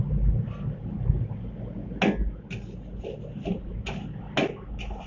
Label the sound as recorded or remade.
recorded